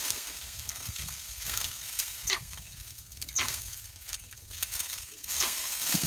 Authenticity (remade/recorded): remade